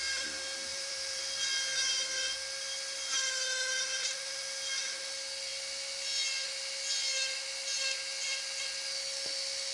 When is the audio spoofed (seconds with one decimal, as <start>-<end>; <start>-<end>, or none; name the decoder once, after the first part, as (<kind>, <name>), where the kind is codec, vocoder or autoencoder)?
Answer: 0.7-1.2 (vocoder, BigVGAN v2)